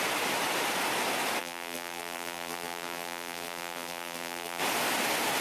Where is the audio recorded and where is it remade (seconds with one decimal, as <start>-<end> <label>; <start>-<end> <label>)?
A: 0.0-1.4 recorded; 1.4-4.6 remade; 4.6-5.4 recorded